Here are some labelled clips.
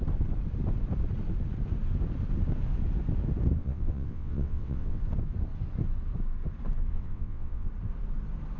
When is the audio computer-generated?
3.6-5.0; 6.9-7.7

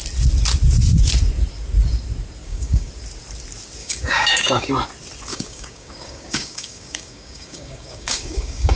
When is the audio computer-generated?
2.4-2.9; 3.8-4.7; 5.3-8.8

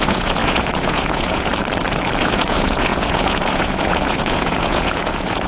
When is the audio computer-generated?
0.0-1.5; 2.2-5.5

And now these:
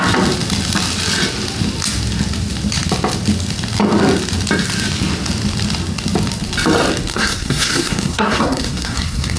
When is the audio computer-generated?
7.1-9.4